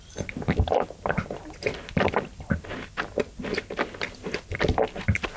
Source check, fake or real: real